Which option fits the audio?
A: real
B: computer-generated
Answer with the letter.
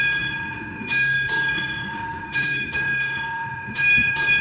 B